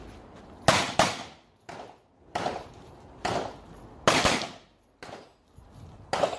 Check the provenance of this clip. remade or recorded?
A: recorded